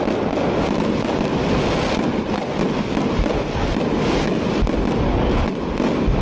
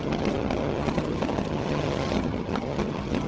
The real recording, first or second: first